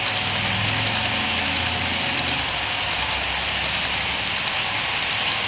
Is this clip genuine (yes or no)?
yes